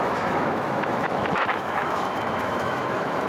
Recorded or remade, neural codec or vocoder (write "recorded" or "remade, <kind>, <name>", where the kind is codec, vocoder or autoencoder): remade, autoencoder, DAC-VAE